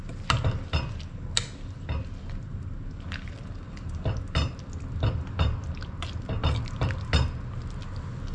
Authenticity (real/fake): real